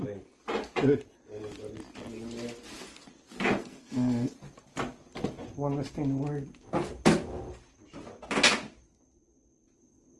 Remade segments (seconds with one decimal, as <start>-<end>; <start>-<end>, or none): 3.6-4.3